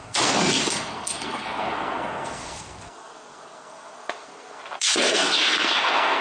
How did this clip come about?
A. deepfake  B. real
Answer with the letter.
A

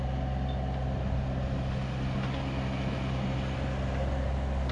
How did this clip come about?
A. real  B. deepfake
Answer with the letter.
A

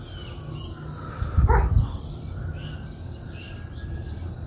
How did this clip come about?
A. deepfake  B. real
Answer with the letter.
B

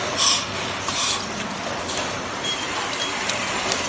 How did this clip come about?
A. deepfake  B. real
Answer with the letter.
A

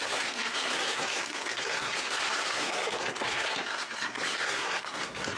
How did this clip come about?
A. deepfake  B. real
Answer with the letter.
A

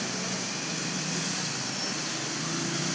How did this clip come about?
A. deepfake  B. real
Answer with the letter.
B